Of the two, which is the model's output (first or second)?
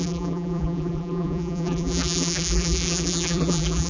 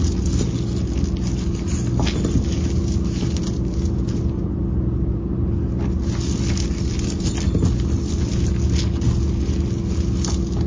first